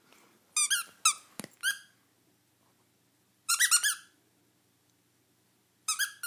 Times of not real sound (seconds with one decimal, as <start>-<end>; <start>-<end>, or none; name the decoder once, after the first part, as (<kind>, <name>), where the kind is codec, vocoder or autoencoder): none